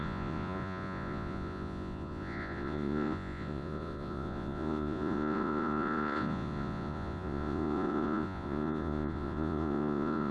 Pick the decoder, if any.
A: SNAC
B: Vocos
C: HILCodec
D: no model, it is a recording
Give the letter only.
B